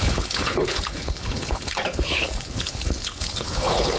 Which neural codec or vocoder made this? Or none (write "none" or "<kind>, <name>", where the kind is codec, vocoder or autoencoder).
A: codec, HILCodec